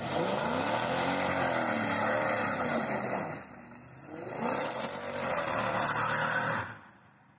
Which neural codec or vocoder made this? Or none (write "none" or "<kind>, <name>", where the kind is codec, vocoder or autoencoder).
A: none